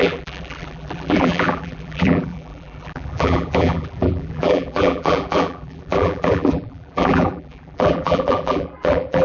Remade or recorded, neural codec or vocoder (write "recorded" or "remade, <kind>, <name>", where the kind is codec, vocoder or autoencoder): remade, vocoder, BigVGAN v2